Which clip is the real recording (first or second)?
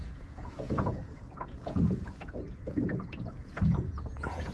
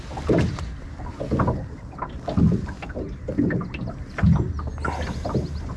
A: second